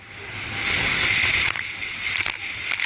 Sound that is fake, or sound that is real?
real